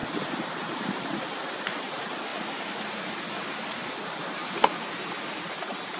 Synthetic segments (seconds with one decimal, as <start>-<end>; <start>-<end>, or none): none